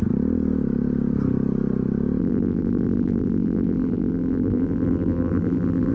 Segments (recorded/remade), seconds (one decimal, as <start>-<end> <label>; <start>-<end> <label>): 0.0-2.2 recorded; 2.2-5.9 remade